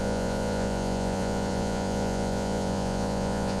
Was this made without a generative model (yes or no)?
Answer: no